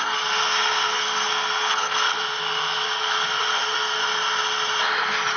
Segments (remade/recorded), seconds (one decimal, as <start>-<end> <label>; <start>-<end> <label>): 0.0-4.0 remade; 4.0-5.4 recorded